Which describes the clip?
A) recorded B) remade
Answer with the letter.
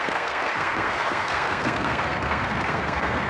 B